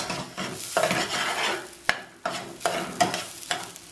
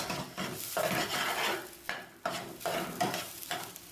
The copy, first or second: second